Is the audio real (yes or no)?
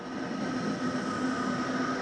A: yes